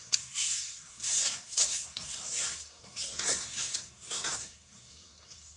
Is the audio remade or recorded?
remade